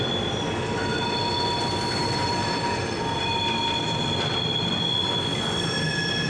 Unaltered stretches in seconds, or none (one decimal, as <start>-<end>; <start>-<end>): 0.0-2.0; 3.1-6.3